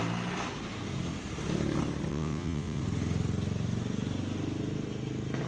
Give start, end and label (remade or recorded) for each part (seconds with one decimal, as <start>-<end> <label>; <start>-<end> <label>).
0.0-2.1 recorded; 2.1-2.8 remade; 2.8-5.5 recorded